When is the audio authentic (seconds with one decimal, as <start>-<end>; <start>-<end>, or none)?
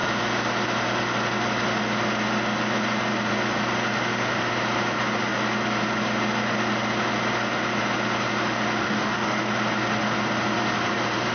0.0-8.8; 9.4-11.3